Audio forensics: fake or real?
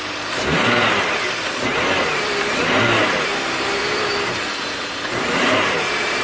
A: fake